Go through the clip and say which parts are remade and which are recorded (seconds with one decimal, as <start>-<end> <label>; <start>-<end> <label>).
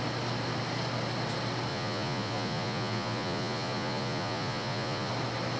0.0-1.7 recorded; 1.7-5.1 remade; 5.1-5.6 recorded